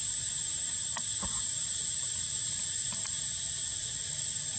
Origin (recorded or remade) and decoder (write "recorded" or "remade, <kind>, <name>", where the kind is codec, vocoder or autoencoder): recorded